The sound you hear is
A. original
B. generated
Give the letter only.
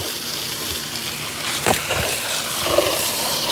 B